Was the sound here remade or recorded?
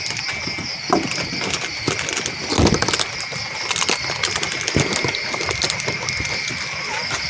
recorded